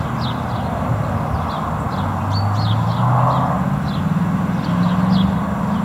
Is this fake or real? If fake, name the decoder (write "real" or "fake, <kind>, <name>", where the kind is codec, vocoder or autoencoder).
real